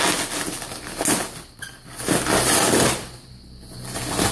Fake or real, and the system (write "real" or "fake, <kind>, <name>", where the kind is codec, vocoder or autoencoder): real